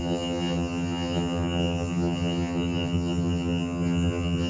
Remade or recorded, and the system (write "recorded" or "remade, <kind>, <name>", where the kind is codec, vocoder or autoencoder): remade, vocoder, HiFi-GAN